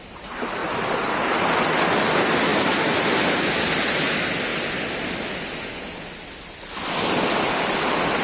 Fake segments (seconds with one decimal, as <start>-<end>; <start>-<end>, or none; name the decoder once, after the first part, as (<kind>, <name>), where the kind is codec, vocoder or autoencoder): none